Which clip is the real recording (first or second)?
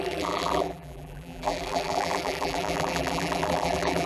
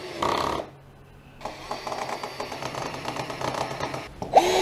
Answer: second